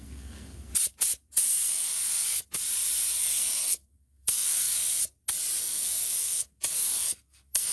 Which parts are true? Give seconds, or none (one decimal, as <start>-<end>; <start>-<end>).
0.7-1.4; 2.5-3.2; 5.0-5.6